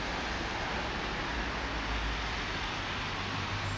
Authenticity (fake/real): real